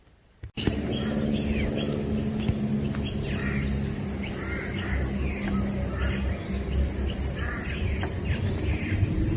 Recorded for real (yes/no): yes